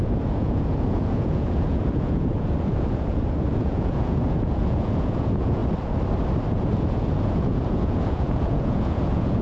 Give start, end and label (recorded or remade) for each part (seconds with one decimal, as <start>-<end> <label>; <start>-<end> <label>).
0.0-5.6 remade; 5.6-6.5 recorded; 6.5-9.4 remade